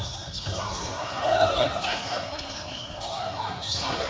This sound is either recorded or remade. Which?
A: remade